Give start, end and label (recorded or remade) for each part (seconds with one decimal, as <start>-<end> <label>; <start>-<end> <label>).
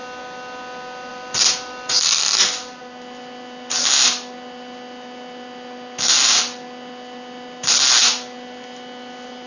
0.0-1.1 recorded; 1.1-2.8 remade; 2.8-9.5 recorded